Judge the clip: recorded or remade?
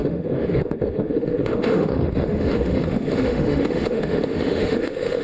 remade